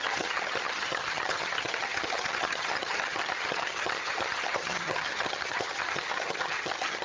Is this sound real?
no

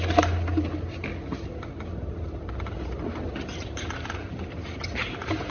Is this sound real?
yes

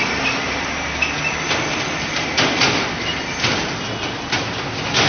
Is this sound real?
yes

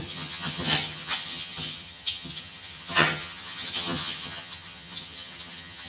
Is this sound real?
no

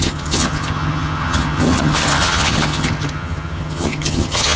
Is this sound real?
no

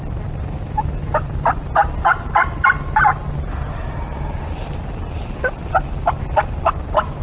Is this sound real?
yes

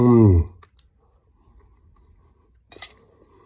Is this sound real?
yes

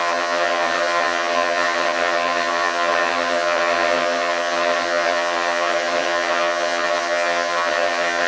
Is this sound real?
no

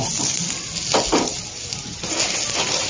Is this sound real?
yes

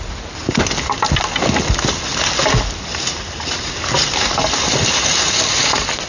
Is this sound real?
yes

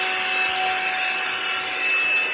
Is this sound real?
yes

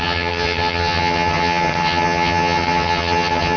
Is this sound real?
no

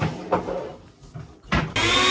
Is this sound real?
yes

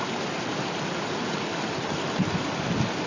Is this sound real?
yes